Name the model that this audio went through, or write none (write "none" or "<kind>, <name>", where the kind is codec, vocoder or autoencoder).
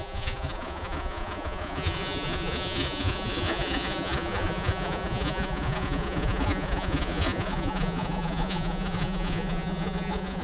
vocoder, Vocos